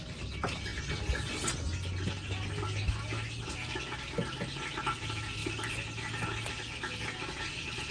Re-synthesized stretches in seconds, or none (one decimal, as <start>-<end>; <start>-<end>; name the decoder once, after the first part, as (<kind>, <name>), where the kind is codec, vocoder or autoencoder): none